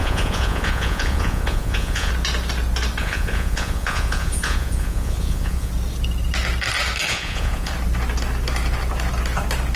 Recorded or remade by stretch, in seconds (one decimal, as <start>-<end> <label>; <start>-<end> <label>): 0.0-2.1 remade; 2.1-3.0 recorded; 3.0-5.7 remade; 5.7-7.1 recorded; 7.1-7.7 remade; 7.7-9.8 recorded